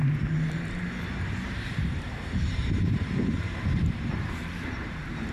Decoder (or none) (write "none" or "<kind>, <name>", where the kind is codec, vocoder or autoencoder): vocoder, BigVGAN v2